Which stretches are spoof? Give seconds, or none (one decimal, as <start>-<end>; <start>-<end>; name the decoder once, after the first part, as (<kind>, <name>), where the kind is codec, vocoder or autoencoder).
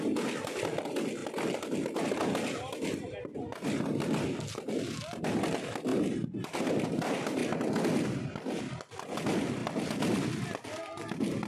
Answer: 5.9-7.0 (vocoder, BigVGAN v2)